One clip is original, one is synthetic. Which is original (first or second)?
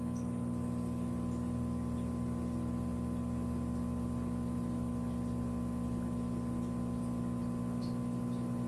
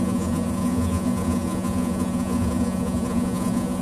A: first